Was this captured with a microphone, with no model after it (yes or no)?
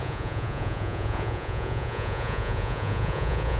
no